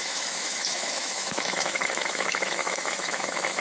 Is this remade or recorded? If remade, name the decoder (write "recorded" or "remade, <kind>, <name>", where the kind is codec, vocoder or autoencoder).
remade, autoencoder, DAC-VAE